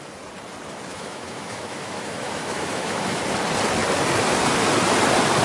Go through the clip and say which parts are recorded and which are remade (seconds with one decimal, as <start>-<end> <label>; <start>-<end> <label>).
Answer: 0.0-0.9 recorded; 0.9-3.2 remade; 3.2-5.4 recorded